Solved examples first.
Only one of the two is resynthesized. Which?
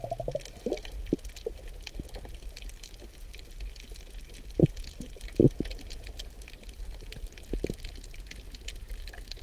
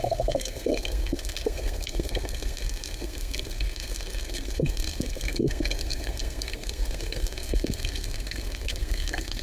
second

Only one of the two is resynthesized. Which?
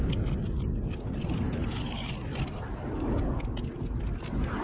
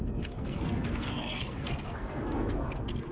second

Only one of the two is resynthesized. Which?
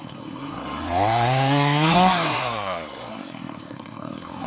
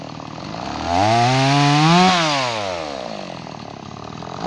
first